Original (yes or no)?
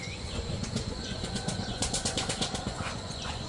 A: no